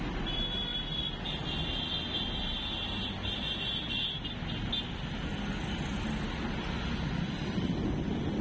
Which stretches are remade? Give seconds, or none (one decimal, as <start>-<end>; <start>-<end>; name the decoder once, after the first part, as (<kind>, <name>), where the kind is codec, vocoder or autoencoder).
none